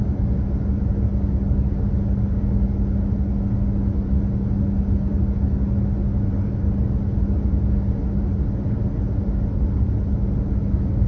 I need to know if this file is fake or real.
real